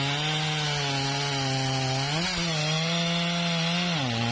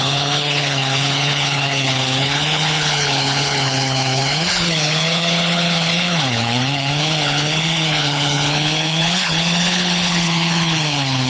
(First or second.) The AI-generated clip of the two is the second